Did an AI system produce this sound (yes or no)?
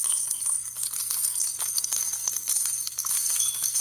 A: yes